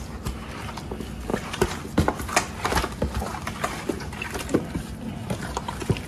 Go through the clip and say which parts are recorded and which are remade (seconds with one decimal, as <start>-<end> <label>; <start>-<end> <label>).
0.0-1.3 recorded; 1.3-1.8 remade; 1.8-3.3 recorded; 3.3-4.3 remade; 4.3-6.1 recorded